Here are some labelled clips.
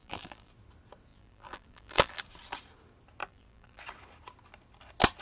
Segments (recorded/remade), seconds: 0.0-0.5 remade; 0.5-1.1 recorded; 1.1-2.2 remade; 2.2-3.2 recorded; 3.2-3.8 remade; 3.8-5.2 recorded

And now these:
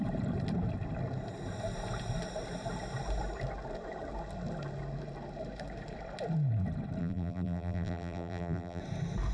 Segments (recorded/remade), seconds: 0.0-7.0 recorded; 7.0-8.8 remade; 8.8-9.3 recorded

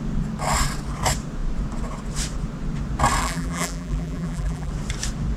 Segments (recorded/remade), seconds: 0.0-3.2 recorded; 3.2-4.7 remade; 4.7-5.4 recorded

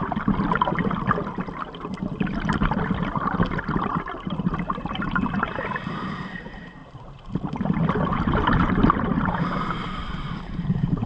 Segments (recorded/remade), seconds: 0.0-4.8 recorded; 4.8-11.1 remade

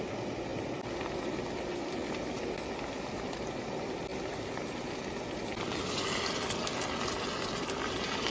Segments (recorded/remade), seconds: 0.0-4.1 recorded; 4.1-4.9 remade; 4.9-8.3 recorded